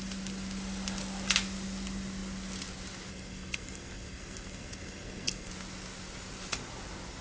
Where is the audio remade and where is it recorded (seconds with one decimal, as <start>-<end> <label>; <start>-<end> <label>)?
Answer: 0.0-3.1 recorded; 3.1-5.5 remade; 5.5-7.2 recorded